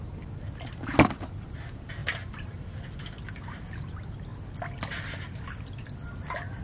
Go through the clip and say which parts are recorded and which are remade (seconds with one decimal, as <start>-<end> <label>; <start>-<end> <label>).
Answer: 0.0-6.6 recorded